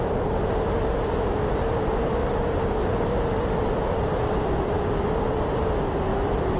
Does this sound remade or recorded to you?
recorded